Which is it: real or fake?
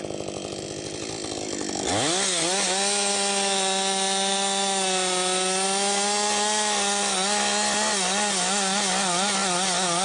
real